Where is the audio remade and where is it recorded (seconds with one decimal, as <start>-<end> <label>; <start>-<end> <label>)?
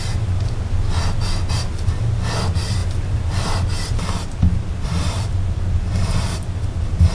0.0-2.8 recorded; 2.8-7.1 remade